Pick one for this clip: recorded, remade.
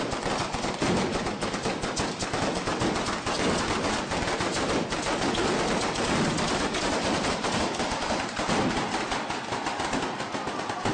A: recorded